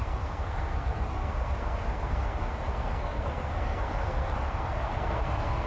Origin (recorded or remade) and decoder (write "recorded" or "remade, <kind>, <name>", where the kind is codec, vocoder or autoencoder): remade, codec, SNAC